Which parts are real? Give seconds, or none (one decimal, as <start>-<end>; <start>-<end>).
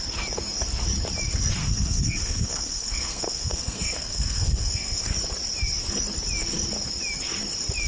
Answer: 0.0-1.6; 5.2-7.9